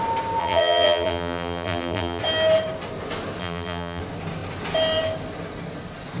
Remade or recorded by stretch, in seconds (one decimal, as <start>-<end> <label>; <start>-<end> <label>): 0.0-0.4 recorded; 0.4-2.2 remade; 2.2-3.4 recorded; 3.4-4.0 remade; 4.0-6.2 recorded